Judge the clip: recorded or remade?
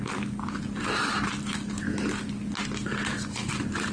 recorded